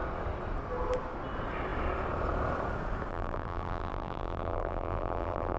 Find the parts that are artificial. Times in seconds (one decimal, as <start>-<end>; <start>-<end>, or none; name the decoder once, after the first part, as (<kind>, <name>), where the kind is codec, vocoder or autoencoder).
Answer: 3.1-5.6 (vocoder, BigVGAN v2)